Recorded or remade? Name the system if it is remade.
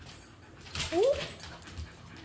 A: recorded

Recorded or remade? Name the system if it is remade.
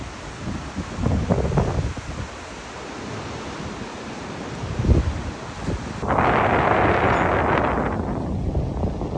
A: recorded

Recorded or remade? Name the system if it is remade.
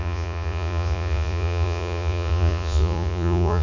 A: remade, vocoder, Vocos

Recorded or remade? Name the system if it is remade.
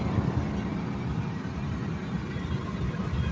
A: recorded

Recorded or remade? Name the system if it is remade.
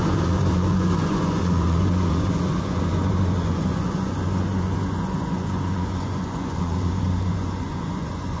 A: remade, vocoder, Vocos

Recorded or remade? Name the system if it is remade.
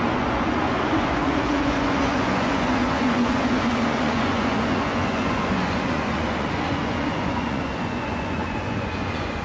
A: remade, vocoder, Vocos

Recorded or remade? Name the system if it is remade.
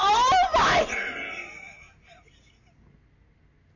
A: recorded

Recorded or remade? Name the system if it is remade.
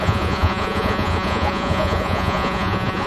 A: remade, vocoder, Vocos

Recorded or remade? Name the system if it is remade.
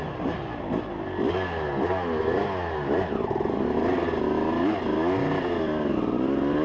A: recorded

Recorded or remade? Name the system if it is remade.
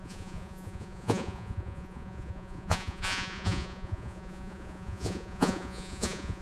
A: remade, vocoder, Vocos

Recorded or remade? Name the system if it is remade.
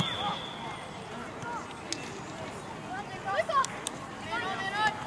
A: recorded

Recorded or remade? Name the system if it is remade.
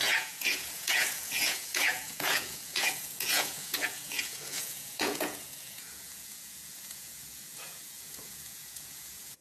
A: remade, vocoder, Vocos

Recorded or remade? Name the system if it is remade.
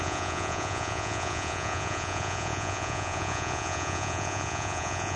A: remade, vocoder, Vocos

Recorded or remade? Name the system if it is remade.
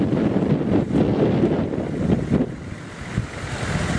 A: recorded